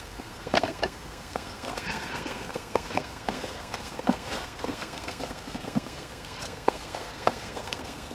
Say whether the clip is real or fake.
fake